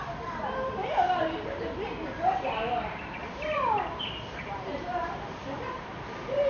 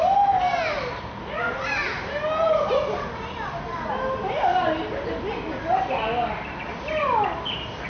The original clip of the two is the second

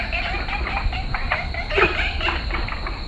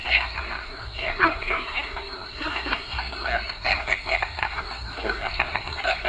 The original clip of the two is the first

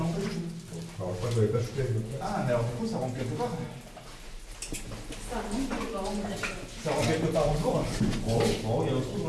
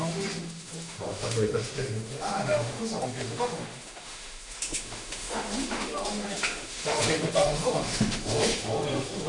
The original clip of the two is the first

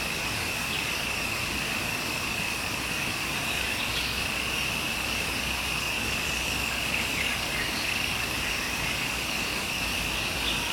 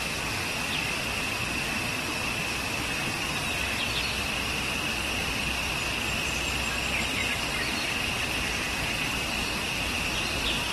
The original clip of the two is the second